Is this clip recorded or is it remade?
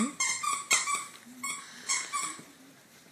remade